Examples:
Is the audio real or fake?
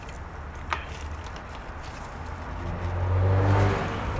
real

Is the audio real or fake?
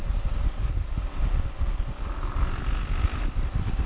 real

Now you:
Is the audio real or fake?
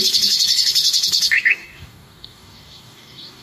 fake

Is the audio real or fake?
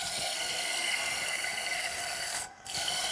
fake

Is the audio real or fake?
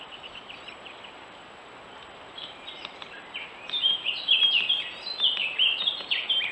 fake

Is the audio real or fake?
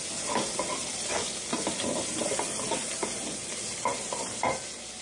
real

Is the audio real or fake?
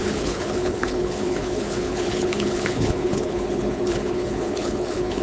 fake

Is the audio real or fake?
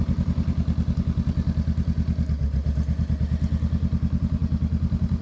real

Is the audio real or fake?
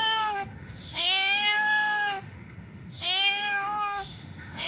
fake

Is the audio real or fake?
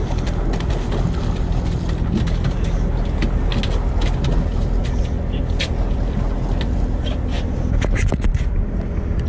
real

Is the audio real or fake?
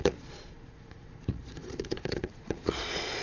fake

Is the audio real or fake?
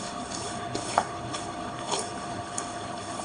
fake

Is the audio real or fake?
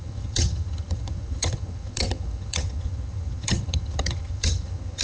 fake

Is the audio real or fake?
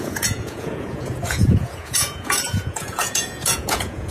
fake